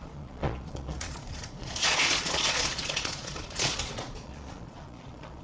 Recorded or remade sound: remade